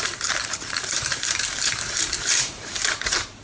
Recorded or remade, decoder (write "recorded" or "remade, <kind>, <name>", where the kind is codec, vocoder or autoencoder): remade, vocoder, BigVGAN v2